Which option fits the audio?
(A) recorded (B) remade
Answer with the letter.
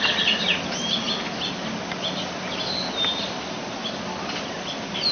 A